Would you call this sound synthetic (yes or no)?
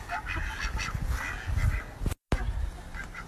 no